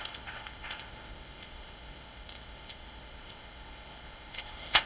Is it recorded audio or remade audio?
remade